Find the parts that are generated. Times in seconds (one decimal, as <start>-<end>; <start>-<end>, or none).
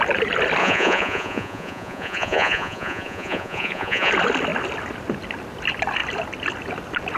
0.6-4.1